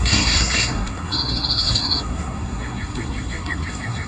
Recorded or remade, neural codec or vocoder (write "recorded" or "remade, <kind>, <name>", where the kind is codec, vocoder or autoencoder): remade, codec, SNAC